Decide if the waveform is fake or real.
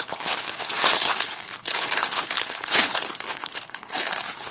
fake